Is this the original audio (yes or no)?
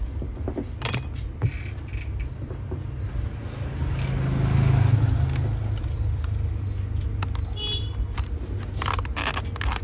yes